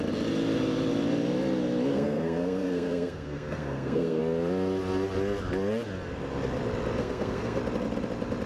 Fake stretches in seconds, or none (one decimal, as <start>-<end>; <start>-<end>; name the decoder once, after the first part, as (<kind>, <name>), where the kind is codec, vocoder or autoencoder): 1.9-4.2 (codec, SNAC); 7.0-7.6